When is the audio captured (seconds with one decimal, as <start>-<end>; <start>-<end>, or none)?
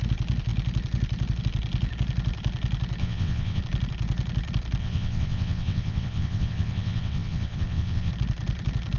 0.0-3.0; 3.6-4.8; 8.1-9.0